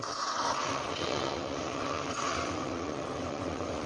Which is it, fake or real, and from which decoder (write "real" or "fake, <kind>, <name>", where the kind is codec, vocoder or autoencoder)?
fake, vocoder, WaveNeXt